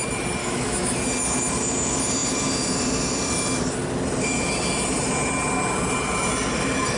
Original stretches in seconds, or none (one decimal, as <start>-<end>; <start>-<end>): 0.0-0.4; 1.0-7.0